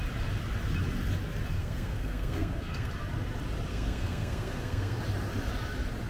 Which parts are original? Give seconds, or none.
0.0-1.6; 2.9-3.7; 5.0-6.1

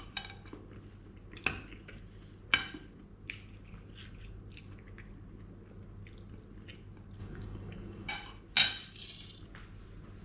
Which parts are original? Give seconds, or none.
0.0-7.2; 8.1-10.2

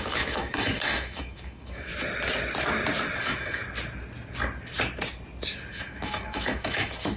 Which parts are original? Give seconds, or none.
1.9-3.2; 3.6-5.7

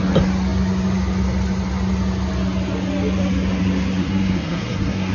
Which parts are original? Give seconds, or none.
0.0-4.0

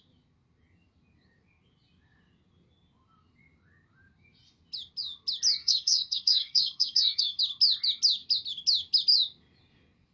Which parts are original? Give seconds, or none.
0.0-5.6; 7.4-10.1

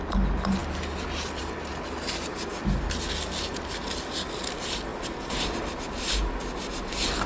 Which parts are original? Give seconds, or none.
0.0-7.3